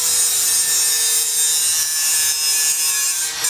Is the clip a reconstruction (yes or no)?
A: no